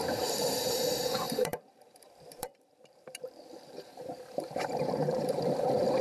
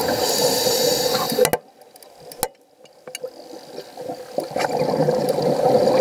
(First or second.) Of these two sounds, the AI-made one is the first